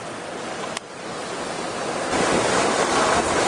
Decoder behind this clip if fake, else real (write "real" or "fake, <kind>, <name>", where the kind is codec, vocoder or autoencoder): real